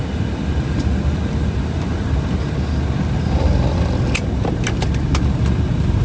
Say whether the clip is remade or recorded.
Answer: recorded